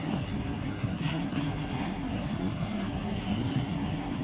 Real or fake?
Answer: fake